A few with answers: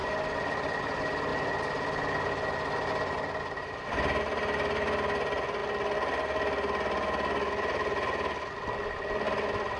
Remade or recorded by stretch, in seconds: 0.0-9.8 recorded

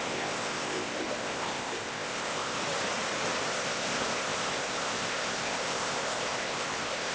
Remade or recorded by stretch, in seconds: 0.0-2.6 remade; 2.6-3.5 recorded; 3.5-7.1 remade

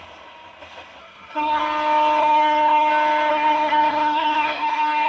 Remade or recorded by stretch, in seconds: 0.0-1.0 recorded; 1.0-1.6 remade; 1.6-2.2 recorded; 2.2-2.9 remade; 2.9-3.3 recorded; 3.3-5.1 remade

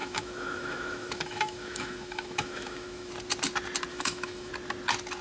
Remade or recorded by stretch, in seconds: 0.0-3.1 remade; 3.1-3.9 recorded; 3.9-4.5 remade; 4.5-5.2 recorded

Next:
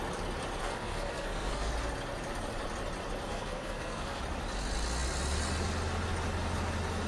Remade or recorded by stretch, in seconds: 0.0-0.6 recorded; 0.6-1.7 remade; 1.7-3.3 recorded; 3.3-4.2 remade; 4.2-7.1 recorded